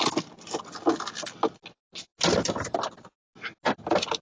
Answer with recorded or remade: recorded